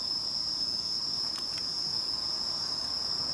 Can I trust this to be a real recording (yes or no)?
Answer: no